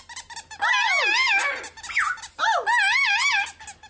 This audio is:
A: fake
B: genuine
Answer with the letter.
B